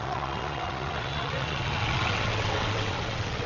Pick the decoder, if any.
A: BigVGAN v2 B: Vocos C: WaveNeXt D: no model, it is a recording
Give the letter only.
C